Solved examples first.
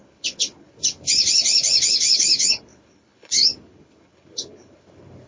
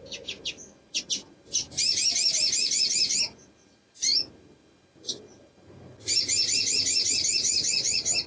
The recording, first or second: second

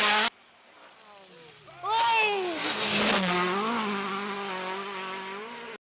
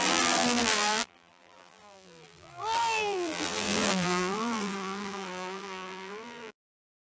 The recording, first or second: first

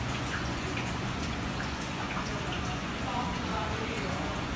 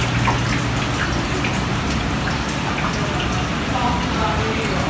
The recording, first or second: second